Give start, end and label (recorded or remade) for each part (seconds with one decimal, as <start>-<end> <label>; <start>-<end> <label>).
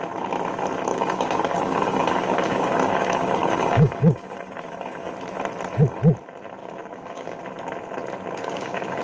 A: 0.0-0.9 recorded; 0.9-5.1 remade; 5.1-6.6 recorded; 6.6-7.4 remade; 7.4-8.4 recorded; 8.4-9.0 remade